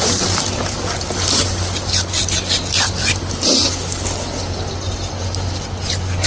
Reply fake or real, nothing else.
real